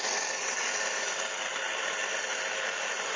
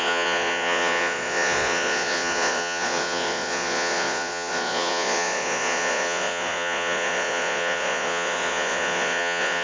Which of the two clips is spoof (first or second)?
second